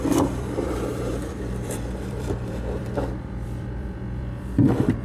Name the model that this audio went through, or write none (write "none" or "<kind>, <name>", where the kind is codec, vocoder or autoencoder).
vocoder, BigVGAN v2